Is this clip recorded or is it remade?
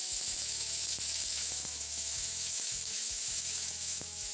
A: remade